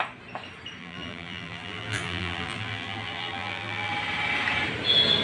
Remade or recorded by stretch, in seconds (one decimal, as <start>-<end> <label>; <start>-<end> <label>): 0.0-0.8 recorded; 0.8-3.9 remade; 3.9-5.2 recorded